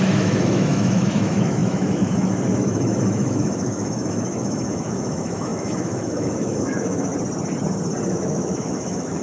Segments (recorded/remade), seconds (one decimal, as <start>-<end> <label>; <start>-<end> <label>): 0.0-7.1 remade; 7.1-8.1 recorded; 8.1-9.2 remade